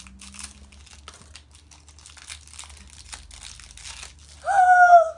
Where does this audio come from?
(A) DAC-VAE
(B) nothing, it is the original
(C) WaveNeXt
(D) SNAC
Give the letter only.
B